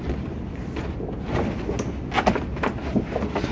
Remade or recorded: recorded